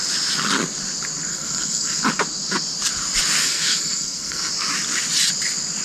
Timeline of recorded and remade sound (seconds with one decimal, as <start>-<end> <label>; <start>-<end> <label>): 0.0-1.3 recorded; 1.3-2.0 remade; 2.0-3.4 recorded; 3.4-4.5 remade; 4.5-5.8 recorded